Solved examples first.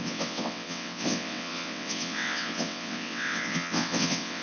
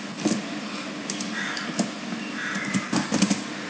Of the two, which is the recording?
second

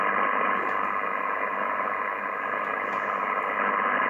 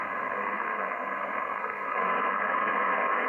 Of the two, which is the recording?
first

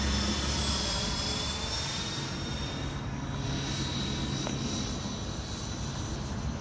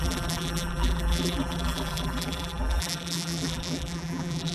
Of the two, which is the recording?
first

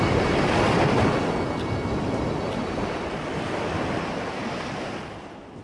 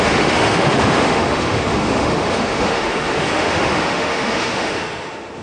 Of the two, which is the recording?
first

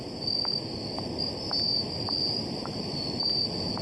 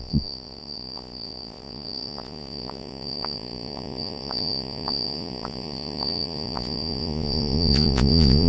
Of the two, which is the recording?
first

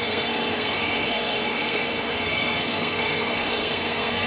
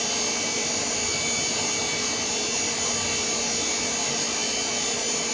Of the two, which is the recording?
second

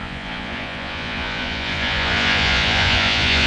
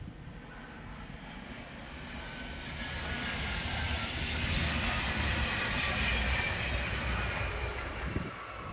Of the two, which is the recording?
second